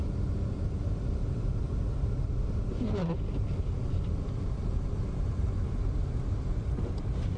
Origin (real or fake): real